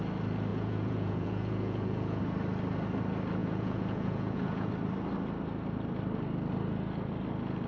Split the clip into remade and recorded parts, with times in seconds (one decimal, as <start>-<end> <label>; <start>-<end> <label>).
0.0-0.5 recorded; 0.5-2.2 remade; 2.2-3.4 recorded; 3.4-4.7 remade; 4.7-7.7 recorded

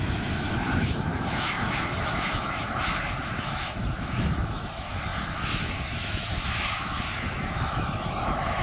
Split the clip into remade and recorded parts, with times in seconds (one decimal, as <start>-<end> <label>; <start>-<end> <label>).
0.0-8.6 remade

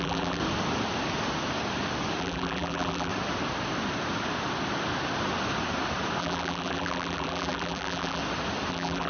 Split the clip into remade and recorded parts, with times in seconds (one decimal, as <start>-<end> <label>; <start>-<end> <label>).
0.0-0.4 remade; 0.4-2.2 recorded; 2.2-3.1 remade; 3.1-6.2 recorded; 6.2-8.2 remade; 8.2-8.7 recorded; 8.7-9.1 remade

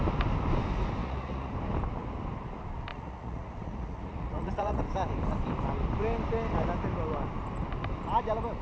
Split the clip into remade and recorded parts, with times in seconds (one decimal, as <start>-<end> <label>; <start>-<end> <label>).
0.0-1.0 recorded; 1.0-1.5 remade; 1.5-2.9 recorded; 2.9-4.8 remade; 4.8-8.6 recorded

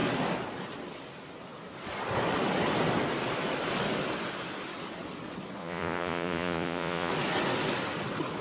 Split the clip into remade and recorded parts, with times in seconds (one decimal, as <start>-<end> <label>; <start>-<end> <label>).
0.0-5.6 recorded; 5.6-7.1 remade; 7.1-8.4 recorded

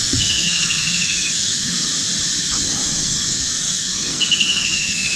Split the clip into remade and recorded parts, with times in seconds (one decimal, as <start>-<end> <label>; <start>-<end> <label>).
0.0-1.9 remade; 1.9-2.5 recorded; 2.5-5.2 remade

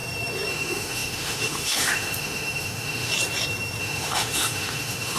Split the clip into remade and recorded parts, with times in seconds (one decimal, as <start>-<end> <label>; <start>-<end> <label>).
0.0-0.5 recorded; 0.5-3.1 remade; 3.1-3.8 recorded; 3.8-5.2 remade